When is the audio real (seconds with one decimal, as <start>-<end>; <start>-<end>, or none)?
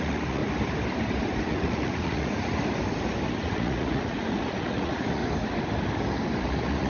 0.4-1.4; 2.6-3.3; 5.2-6.4